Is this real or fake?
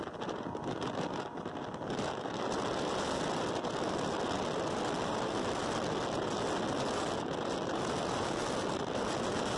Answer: real